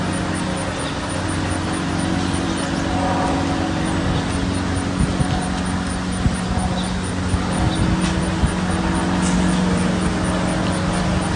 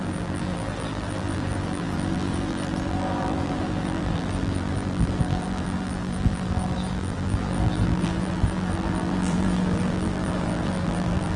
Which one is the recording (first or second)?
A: first